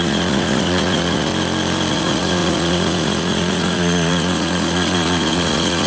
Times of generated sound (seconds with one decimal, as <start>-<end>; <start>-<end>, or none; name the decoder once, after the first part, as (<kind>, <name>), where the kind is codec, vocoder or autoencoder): 0.0-1.3 (vocoder, Vocos); 1.9-5.9